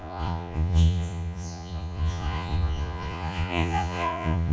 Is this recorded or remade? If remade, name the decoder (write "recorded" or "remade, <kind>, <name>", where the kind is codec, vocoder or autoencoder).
remade, vocoder, Vocos